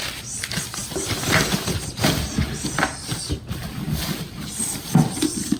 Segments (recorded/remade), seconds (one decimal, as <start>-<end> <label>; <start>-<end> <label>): 0.0-5.6 recorded